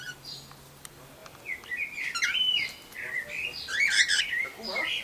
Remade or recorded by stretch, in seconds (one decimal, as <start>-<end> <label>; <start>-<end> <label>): 0.0-5.0 recorded